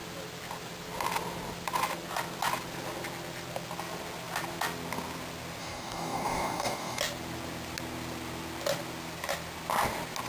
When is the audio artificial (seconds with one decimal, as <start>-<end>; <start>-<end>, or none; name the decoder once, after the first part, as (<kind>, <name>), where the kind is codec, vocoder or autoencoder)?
5.6-7.0 (codec, DAC)